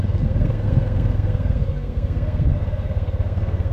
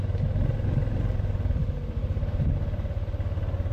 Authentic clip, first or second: second